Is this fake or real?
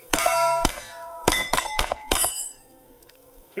fake